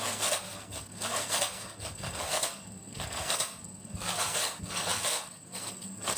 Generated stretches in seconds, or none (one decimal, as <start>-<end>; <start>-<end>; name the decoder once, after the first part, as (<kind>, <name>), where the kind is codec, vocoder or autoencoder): 0.0-6.2 (codec, SNAC)